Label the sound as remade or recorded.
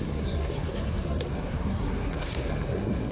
remade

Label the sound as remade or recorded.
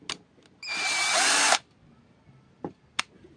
recorded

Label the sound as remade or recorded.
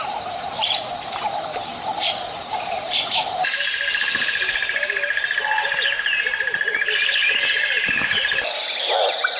remade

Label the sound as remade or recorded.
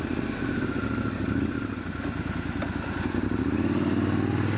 recorded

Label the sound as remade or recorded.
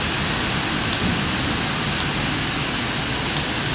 recorded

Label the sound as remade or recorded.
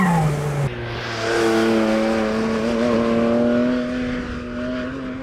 recorded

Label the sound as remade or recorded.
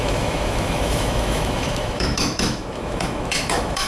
remade